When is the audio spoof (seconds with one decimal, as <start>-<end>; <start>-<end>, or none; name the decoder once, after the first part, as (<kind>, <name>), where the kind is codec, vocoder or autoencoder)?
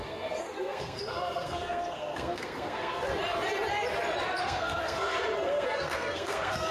0.0-3.1 (codec, SNAC); 4.4-6.7